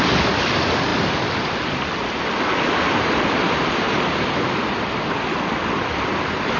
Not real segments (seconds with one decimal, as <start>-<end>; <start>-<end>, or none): none